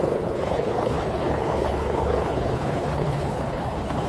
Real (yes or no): no